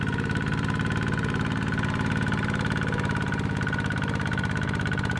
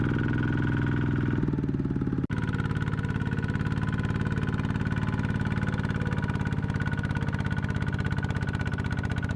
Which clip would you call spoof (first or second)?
first